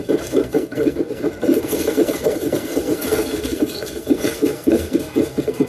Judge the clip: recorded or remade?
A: remade